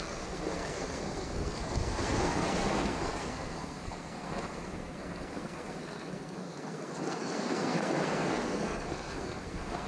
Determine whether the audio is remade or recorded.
remade